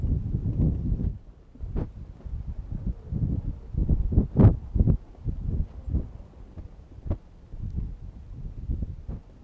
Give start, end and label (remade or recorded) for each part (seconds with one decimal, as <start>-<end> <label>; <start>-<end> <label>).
0.0-1.1 recorded; 1.1-1.6 remade; 1.6-3.8 recorded; 3.8-7.6 remade; 7.6-9.4 recorded

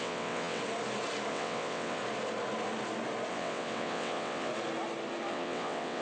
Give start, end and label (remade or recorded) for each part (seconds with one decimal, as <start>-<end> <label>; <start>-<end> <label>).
0.0-0.6 remade; 0.6-1.3 recorded; 1.3-2.0 remade; 2.0-3.3 recorded; 3.3-4.5 remade; 4.5-5.3 recorded; 5.3-6.0 remade

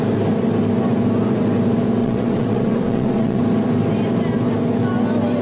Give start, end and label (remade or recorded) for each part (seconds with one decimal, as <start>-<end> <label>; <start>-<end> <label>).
0.0-2.0 recorded; 2.0-3.4 remade; 3.4-5.4 recorded

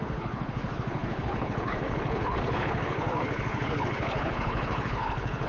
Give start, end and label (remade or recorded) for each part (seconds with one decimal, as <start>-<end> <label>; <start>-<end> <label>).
0.0-5.5 remade

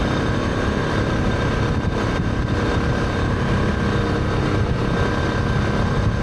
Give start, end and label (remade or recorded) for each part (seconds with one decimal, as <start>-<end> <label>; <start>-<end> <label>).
0.0-3.7 remade; 3.7-6.2 recorded

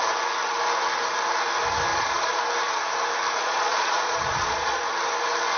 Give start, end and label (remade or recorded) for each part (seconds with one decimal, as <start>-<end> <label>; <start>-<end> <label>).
0.0-1.9 recorded; 1.9-2.4 remade; 2.4-3.4 recorded; 3.4-4.8 remade; 4.8-5.6 recorded

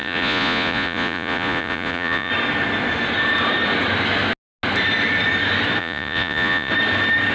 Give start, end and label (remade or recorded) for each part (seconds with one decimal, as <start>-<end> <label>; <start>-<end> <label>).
0.0-2.3 remade; 2.3-5.8 recorded; 5.8-6.7 remade; 6.7-7.3 recorded

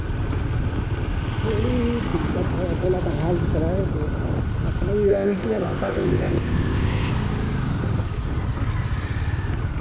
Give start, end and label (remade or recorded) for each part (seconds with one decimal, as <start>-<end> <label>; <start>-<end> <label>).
0.0-5.1 recorded; 5.1-7.1 remade; 7.1-9.8 recorded